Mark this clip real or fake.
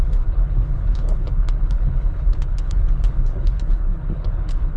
fake